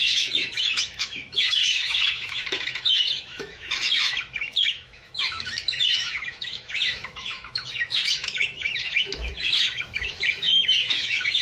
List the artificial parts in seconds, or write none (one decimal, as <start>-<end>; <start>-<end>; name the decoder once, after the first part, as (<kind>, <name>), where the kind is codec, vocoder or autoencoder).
0.0-11.4 (autoencoder, DAC-VAE)